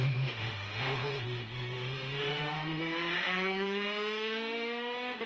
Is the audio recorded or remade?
remade